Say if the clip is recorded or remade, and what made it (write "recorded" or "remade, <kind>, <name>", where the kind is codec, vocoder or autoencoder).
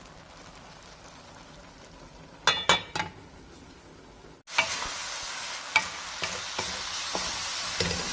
recorded